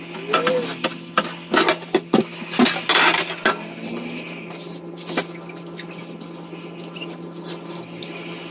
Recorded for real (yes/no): yes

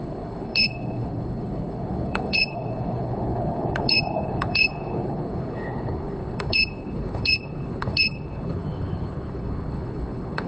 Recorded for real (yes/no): no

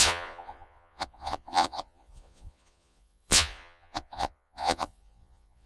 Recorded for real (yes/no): no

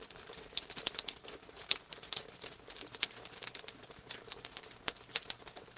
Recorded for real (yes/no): no